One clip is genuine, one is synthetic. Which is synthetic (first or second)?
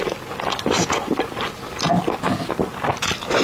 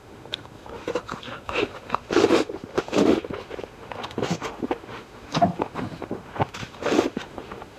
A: second